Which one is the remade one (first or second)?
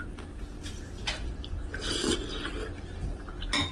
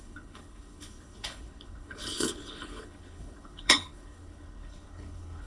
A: second